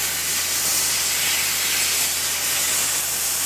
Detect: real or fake real